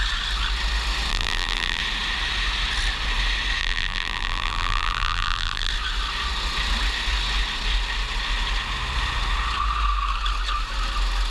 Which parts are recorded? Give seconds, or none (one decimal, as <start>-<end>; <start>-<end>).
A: 0.0-1.1; 1.8-3.6; 5.7-11.3